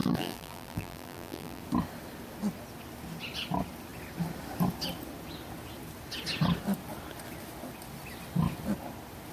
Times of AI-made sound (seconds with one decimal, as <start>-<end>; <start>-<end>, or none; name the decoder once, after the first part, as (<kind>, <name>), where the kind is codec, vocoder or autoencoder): 0.0-1.6 (vocoder, BigVGAN v2)